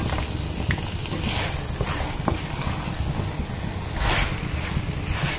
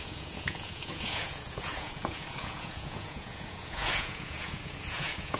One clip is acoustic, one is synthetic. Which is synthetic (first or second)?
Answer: second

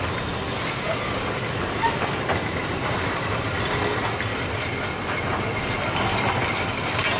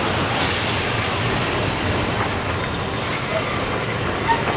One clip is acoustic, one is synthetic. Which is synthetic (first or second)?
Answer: first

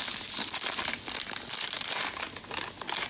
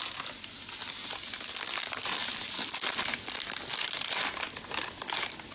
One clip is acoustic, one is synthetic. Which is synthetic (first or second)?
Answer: second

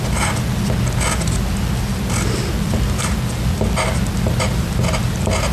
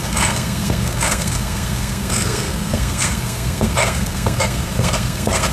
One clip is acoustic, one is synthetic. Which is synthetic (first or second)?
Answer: second